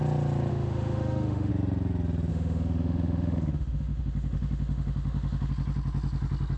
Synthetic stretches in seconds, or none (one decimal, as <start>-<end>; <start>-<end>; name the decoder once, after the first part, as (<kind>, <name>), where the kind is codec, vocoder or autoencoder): 0.5-1.5 (autoencoder, DAC-VAE); 2.3-5.5